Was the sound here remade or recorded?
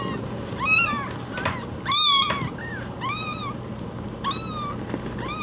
remade